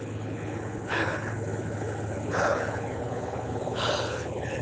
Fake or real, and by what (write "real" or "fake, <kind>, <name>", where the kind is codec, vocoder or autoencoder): fake, codec, HILCodec